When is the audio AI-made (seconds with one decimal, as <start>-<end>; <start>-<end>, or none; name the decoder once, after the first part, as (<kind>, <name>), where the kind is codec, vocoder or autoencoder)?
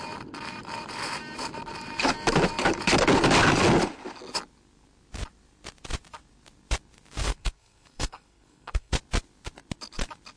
7.2-8.9 (codec, SNAC)